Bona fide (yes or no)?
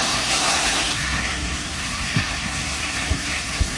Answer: no